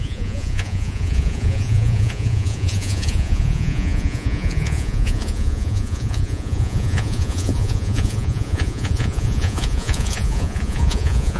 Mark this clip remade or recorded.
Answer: remade